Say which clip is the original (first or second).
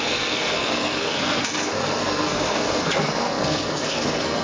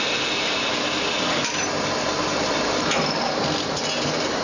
second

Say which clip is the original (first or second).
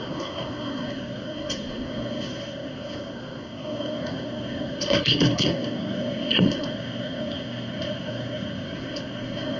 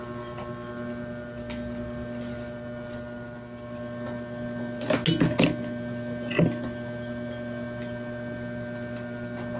second